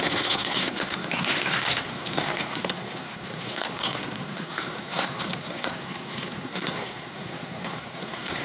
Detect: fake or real fake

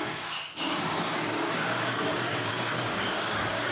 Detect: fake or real fake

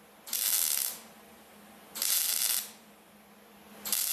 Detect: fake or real real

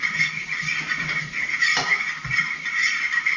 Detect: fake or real real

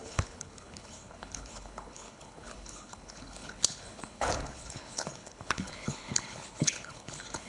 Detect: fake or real fake